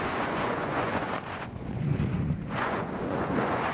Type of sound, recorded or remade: remade